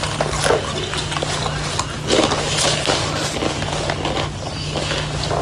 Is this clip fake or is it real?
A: real